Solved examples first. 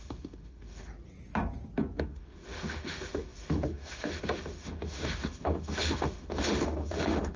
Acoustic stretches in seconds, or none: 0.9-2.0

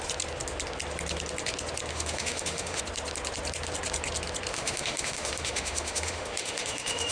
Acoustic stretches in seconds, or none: 0.0-1.9; 2.8-4.5

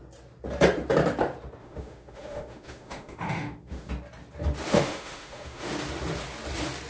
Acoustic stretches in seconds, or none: 0.0-1.6; 3.9-4.7; 5.7-6.9